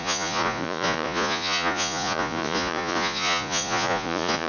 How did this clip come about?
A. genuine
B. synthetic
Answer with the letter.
B